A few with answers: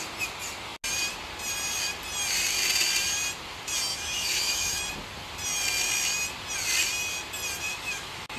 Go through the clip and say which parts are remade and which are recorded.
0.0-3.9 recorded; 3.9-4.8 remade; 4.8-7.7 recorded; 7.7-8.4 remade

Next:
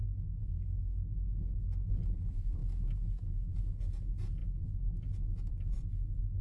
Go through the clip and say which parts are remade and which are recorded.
0.0-6.4 recorded